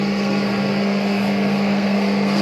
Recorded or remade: remade